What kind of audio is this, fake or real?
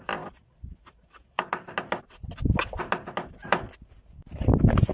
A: real